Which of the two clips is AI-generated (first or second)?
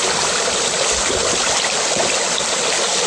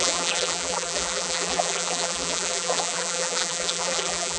second